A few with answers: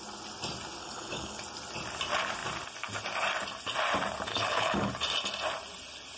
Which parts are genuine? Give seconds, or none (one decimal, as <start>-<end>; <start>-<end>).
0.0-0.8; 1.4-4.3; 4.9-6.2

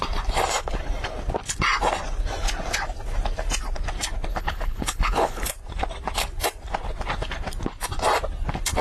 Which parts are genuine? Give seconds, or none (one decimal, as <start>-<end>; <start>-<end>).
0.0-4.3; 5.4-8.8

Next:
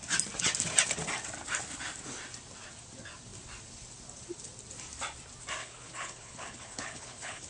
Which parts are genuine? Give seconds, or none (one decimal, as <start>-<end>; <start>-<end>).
0.0-5.6

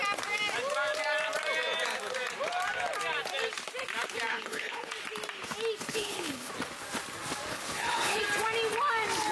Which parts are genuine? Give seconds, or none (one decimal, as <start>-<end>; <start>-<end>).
0.0-4.3; 4.9-5.8; 6.5-7.5; 8.2-9.3

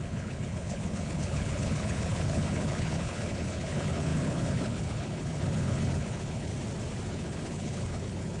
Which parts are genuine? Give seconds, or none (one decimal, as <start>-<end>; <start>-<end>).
6.5-7.1

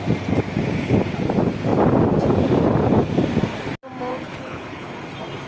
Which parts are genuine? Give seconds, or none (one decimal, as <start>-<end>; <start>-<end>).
0.0-4.1; 4.9-5.5